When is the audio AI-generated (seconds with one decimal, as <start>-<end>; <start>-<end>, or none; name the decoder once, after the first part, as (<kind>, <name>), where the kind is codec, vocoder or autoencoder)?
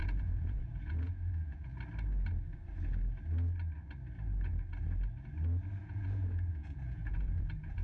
0.0-1.7 (vocoder, Vocos); 5.8-7.8